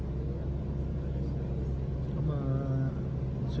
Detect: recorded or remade recorded